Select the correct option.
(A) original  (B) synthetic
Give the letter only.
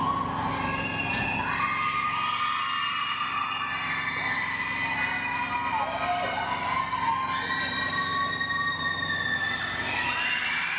A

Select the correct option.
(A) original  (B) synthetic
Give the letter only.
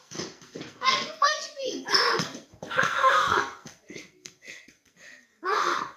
B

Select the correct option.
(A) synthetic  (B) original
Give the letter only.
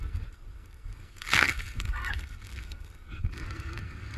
A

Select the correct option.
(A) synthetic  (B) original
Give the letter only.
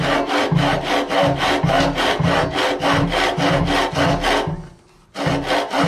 B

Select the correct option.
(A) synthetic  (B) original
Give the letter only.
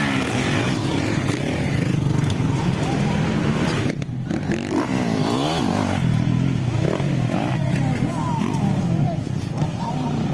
B